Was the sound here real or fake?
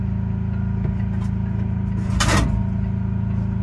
real